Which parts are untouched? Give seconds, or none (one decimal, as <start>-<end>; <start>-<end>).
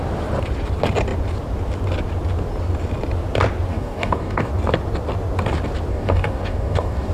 0.0-3.7; 4.5-5.9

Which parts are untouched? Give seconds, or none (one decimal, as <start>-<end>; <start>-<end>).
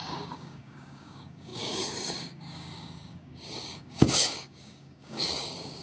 none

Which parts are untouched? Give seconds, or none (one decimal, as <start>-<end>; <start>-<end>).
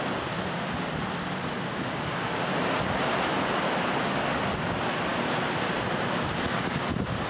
0.0-1.7; 2.4-5.1; 5.7-7.3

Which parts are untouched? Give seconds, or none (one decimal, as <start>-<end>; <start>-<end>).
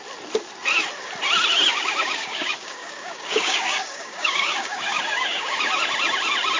0.0-1.7; 5.7-6.6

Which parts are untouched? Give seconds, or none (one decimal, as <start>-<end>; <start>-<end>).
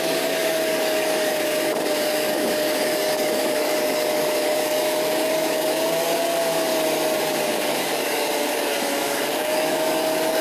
6.7-7.2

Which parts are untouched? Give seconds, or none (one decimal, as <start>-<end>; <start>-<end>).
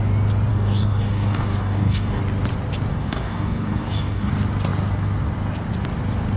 0.0-0.5; 2.2-2.9; 4.3-6.4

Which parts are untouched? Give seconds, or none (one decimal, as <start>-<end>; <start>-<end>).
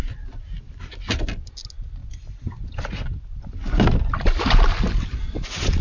0.0-5.8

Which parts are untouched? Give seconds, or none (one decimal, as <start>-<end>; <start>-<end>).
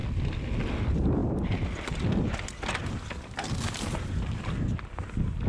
0.0-5.5